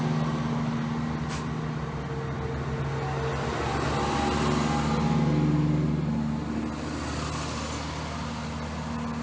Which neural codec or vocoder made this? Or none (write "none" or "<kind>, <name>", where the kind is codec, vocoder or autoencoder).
none